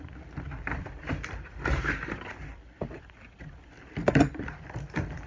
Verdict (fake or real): fake